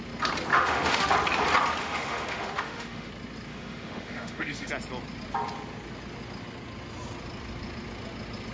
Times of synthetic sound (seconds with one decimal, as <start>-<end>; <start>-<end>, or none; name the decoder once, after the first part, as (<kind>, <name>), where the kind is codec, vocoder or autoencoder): 0.5-1.1 (autoencoder, DAC-VAE); 1.8-3.1; 3.5-4.7